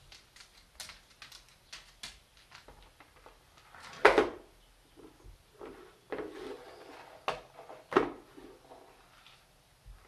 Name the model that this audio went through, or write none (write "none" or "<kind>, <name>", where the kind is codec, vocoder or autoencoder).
none